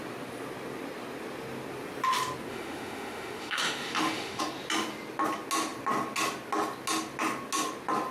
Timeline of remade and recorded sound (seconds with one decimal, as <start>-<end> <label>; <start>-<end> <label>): 0.0-2.5 recorded; 2.5-4.4 remade; 4.4-8.1 recorded